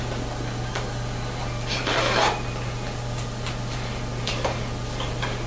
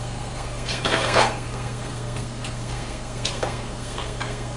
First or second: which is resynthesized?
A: second